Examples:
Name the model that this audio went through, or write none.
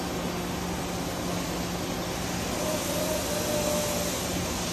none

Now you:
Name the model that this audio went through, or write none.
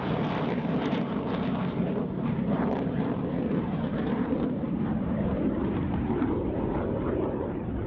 vocoder, BigVGAN v2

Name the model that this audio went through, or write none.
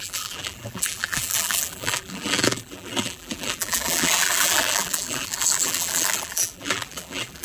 vocoder, BigVGAN v2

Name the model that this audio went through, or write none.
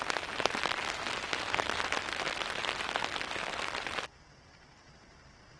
none